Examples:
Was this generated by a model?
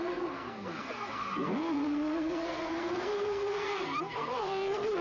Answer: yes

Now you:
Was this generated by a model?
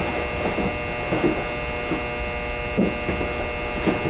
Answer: no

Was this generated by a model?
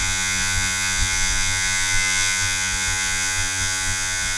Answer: yes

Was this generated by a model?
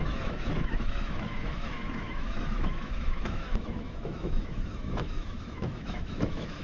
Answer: yes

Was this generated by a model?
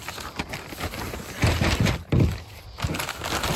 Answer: no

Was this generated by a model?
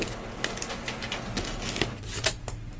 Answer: no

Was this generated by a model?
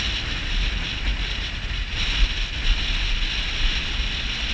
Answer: no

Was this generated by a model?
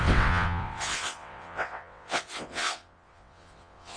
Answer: yes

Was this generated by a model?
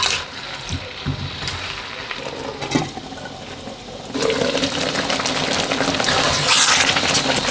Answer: no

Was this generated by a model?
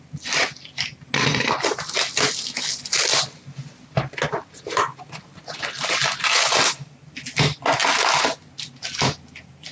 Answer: no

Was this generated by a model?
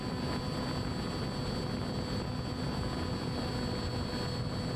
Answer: no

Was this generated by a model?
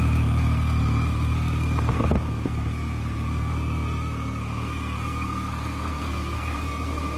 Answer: yes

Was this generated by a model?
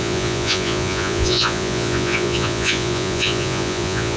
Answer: yes